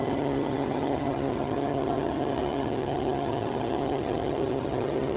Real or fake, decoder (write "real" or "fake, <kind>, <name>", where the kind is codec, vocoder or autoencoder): fake, vocoder, HiFi-GAN